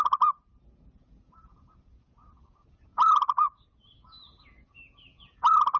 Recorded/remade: remade